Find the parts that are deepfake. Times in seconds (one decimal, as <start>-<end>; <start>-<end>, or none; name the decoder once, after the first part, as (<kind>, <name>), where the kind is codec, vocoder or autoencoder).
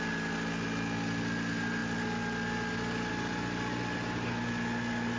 none